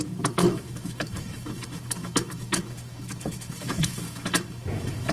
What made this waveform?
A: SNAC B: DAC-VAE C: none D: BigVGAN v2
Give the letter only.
B